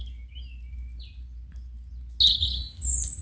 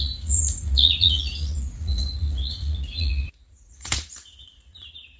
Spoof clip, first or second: second